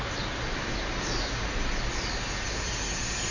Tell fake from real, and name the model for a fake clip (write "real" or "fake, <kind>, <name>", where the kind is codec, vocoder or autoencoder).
real